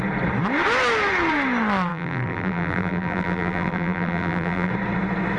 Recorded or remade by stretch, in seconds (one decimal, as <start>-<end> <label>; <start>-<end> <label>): 0.0-1.9 recorded; 1.9-4.7 remade; 4.7-5.4 recorded